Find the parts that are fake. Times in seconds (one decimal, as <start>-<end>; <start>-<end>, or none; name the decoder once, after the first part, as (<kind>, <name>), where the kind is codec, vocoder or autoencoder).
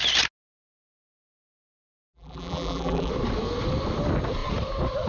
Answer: 1.3-3.1 (vocoder, BigVGAN v2)